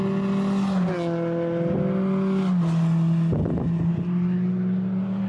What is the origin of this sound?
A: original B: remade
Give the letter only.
A